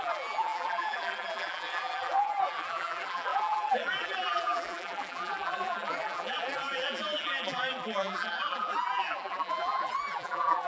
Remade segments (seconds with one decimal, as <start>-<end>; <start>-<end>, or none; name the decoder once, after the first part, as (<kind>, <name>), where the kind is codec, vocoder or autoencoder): 0.0-10.7 (vocoder, BigVGAN v2)